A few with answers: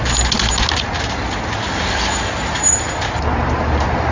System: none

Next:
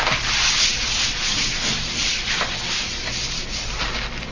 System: none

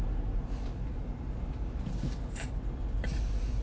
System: none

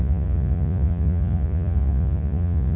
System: vocoder, Vocos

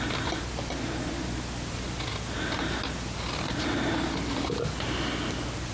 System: none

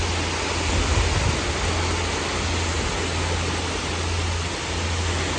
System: none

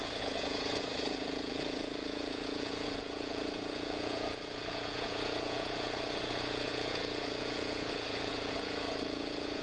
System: vocoder, Vocos